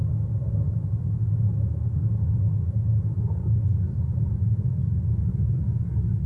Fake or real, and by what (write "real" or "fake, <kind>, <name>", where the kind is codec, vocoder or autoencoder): real